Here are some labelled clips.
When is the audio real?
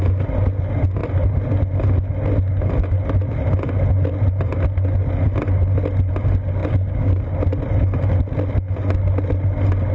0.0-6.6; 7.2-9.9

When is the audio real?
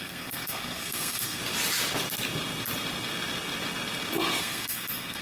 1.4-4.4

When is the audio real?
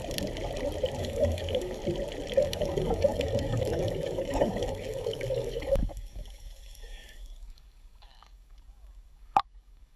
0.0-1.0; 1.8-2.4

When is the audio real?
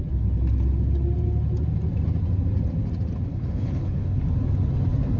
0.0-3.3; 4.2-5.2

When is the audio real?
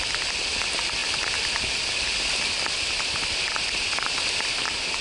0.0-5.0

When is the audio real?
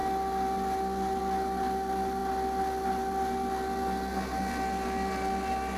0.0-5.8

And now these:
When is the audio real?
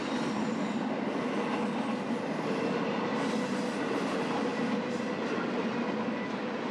0.0-6.7